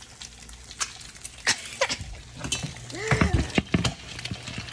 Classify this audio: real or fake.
real